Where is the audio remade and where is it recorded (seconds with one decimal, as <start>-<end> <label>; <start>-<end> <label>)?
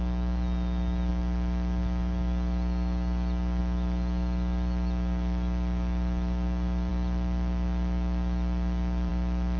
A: 0.0-9.6 recorded